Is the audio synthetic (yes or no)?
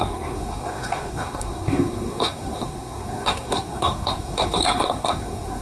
yes